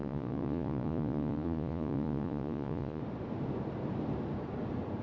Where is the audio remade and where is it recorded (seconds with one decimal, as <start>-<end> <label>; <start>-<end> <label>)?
0.0-3.0 remade; 3.0-5.0 recorded